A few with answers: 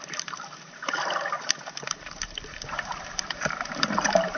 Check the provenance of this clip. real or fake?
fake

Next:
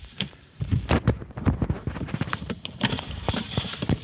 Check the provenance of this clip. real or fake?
fake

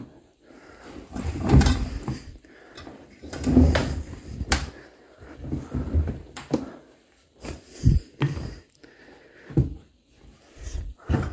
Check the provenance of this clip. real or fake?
fake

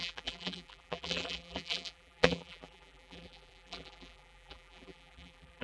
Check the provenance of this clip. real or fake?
fake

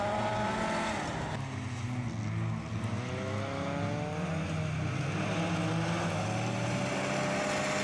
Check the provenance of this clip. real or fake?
real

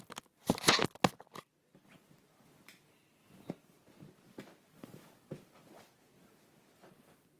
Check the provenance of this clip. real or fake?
real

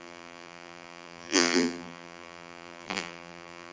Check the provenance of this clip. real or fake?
fake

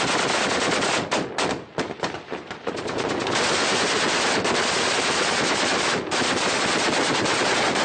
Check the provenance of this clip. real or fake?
real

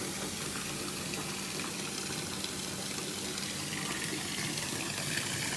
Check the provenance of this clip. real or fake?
real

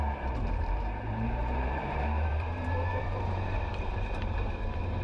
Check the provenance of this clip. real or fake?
fake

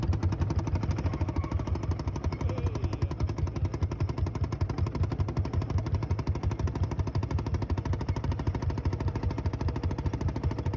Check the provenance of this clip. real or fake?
real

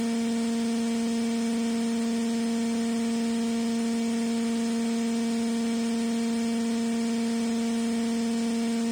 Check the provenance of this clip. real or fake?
real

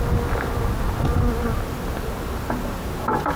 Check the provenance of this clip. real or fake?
real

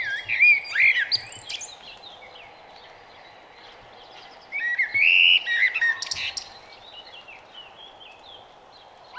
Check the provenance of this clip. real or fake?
real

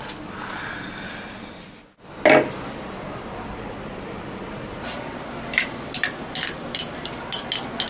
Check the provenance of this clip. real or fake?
real